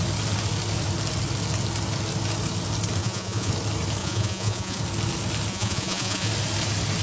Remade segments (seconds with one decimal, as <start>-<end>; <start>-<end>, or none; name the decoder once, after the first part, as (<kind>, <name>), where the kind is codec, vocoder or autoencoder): 3.0-3.5 (vocoder, Vocos); 4.0-4.8; 5.5-6.3